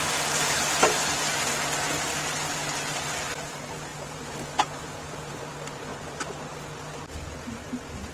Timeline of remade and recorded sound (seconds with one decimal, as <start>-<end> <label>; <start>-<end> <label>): 0.0-0.4 recorded; 0.4-1.0 remade; 1.0-3.9 recorded; 3.9-5.4 remade; 5.4-5.9 recorded; 5.9-6.5 remade; 6.5-8.1 recorded

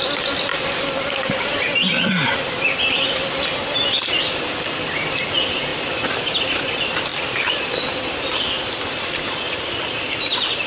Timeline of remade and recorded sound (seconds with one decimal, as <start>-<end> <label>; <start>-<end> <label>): 0.0-10.7 recorded

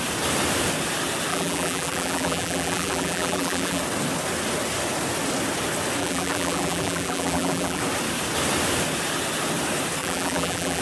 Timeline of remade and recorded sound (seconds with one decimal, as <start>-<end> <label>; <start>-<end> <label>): 0.0-1.3 recorded; 1.3-3.8 remade; 3.8-6.0 recorded; 6.0-7.8 remade; 7.8-10.0 recorded; 10.0-10.8 remade

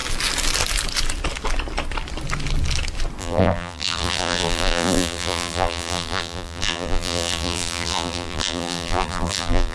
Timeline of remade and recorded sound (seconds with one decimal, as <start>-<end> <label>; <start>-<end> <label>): 0.0-3.2 recorded; 3.2-9.7 remade

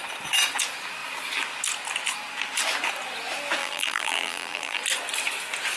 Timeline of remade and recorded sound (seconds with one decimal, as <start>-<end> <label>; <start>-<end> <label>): 0.0-3.6 recorded; 3.6-4.8 remade; 4.8-5.8 recorded

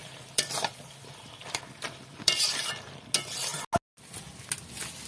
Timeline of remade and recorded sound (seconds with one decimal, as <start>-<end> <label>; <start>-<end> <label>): 0.0-2.7 remade; 2.7-5.1 recorded

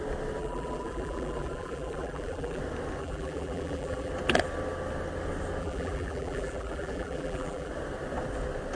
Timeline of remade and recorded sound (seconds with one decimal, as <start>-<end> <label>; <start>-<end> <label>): 0.0-0.4 recorded; 0.4-2.6 remade; 2.6-3.0 recorded; 3.0-4.1 remade; 4.1-5.6 recorded; 5.6-7.7 remade; 7.7-8.8 recorded